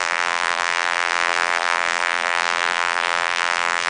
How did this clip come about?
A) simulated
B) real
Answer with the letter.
A